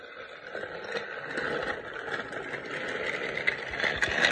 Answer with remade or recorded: recorded